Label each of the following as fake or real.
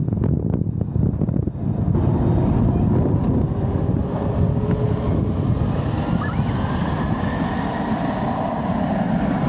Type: real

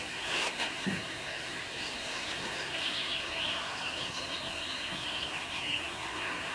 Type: fake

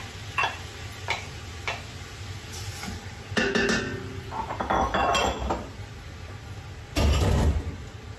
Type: real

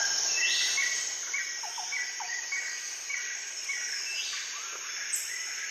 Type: real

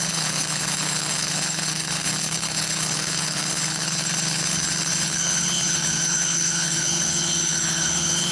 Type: fake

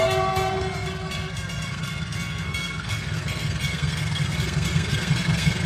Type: fake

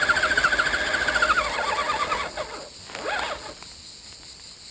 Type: real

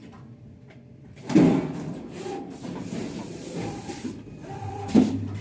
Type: fake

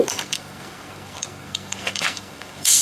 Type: fake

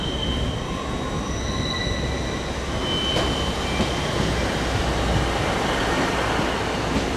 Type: real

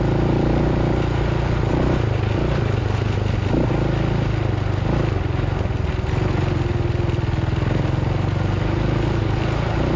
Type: real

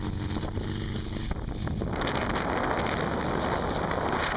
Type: real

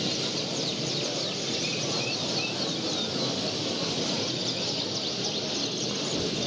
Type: real